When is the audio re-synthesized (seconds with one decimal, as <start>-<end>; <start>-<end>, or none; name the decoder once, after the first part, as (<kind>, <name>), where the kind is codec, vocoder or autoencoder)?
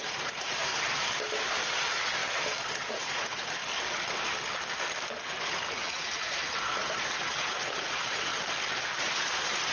0.0-0.7 (vocoder, Vocos); 1.6-2.2; 2.9-3.6; 5.2-8.3